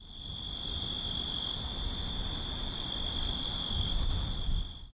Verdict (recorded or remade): recorded